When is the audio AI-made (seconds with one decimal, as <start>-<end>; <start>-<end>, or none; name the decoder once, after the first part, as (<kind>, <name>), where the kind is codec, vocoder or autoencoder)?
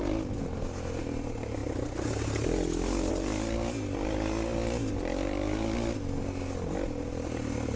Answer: none